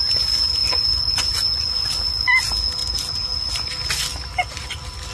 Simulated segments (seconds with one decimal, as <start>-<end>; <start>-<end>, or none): 4.1-4.6